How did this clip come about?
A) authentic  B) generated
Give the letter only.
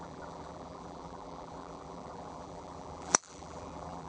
B